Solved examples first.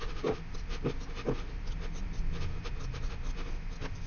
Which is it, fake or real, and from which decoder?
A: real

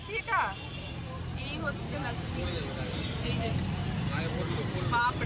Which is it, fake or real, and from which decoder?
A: real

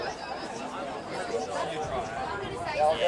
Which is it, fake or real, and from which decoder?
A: real